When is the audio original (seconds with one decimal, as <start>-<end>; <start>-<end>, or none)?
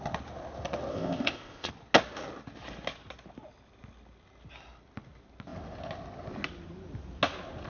0.0-0.9; 1.7-7.7